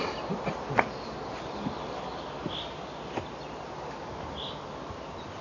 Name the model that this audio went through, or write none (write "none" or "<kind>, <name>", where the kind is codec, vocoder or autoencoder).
none